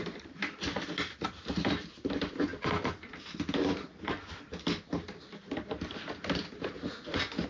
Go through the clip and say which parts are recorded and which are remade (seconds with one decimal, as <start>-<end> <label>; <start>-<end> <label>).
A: 0.0-7.5 recorded